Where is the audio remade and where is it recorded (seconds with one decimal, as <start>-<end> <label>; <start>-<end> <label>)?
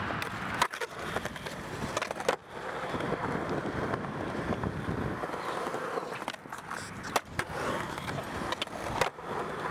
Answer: 0.0-9.7 recorded